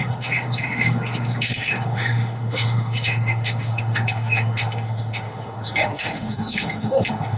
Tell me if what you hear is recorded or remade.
remade